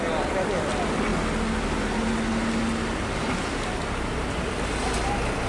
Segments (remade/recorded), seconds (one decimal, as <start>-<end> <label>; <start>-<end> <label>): 0.0-5.5 recorded